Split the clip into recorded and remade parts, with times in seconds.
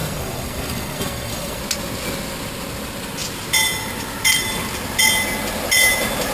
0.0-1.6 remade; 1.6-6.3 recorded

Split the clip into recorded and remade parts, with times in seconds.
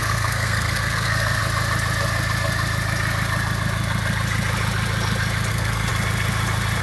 0.0-1.4 remade; 1.4-5.5 recorded; 5.5-5.9 remade; 5.9-6.8 recorded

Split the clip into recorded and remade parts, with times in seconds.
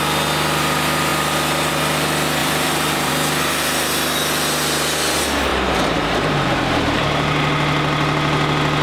0.0-2.4 recorded; 2.4-3.1 remade; 3.1-5.5 recorded; 5.5-7.0 remade; 7.0-8.8 recorded